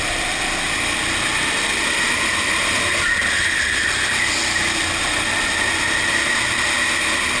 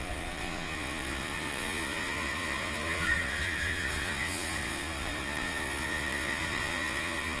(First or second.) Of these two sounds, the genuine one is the first